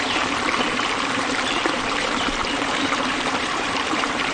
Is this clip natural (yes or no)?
no